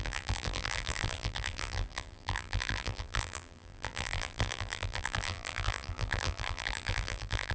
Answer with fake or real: fake